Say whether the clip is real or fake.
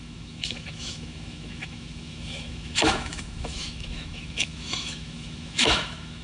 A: fake